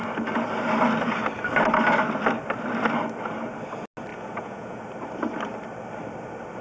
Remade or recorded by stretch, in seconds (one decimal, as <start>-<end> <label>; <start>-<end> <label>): 0.0-4.1 recorded; 4.1-4.8 remade; 4.8-6.6 recorded